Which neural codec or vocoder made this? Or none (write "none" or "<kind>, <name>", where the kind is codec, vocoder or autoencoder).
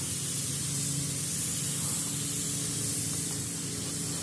none